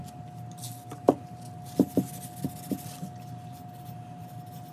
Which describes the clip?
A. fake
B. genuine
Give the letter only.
B